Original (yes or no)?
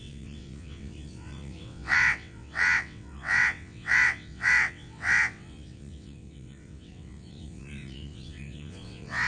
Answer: no